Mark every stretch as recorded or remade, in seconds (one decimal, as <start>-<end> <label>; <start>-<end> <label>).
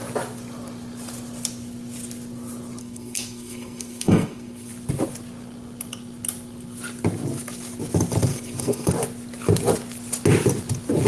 0.0-2.8 recorded; 2.8-4.7 remade; 4.7-8.3 recorded; 8.3-8.9 remade; 8.9-11.1 recorded